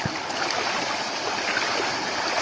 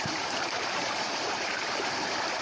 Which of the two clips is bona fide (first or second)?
first